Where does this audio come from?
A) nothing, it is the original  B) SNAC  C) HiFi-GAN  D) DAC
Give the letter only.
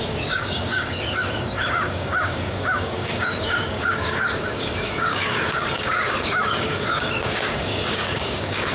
D